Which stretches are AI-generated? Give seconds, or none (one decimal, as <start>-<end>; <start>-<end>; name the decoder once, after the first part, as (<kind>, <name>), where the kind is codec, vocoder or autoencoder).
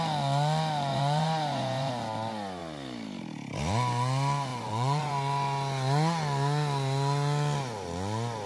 0.9-1.9 (vocoder, Vocos); 4.5-5.1